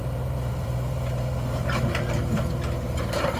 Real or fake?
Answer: fake